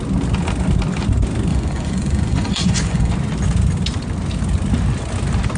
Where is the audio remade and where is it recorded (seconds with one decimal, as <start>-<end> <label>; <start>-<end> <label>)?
0.0-1.5 recorded; 1.5-3.1 remade; 3.1-5.6 recorded